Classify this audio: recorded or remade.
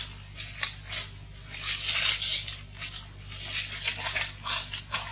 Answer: recorded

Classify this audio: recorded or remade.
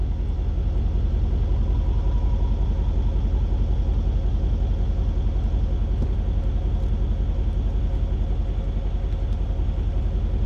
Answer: recorded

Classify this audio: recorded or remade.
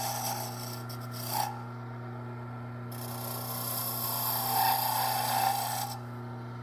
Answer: recorded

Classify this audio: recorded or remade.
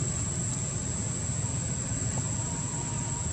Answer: recorded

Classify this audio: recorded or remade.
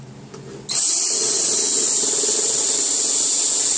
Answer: recorded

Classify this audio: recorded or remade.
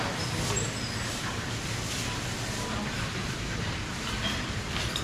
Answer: recorded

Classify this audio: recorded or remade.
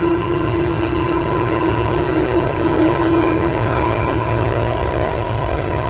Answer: remade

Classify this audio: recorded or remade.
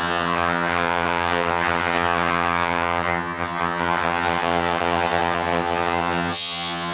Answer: remade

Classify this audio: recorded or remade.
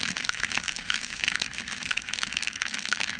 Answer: remade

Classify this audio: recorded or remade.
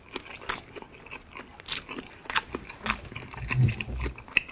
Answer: recorded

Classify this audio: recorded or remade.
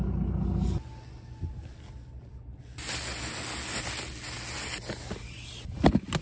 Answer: recorded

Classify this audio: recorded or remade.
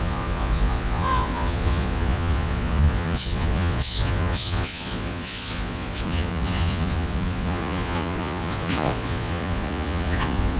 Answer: remade